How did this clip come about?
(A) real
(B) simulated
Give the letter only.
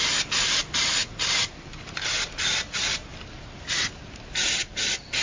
A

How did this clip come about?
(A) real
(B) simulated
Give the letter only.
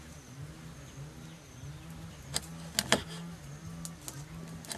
A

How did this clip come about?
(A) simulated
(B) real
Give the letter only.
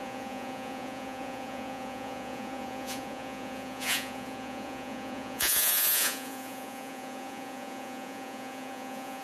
A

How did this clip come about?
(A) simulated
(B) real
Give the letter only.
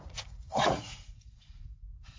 A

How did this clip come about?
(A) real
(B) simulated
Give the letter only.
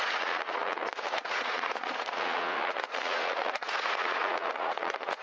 B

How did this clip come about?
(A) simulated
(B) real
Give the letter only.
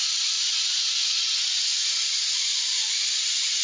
A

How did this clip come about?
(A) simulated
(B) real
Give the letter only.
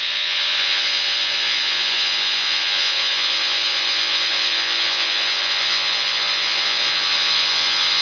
A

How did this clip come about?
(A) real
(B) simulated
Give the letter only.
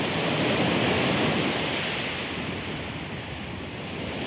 A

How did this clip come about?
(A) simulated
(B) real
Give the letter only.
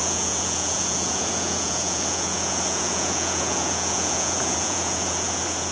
A